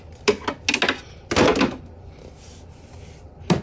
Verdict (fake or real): real